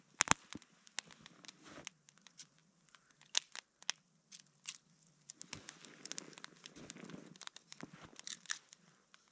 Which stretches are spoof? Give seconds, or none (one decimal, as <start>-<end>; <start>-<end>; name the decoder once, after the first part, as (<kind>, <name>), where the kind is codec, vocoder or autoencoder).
none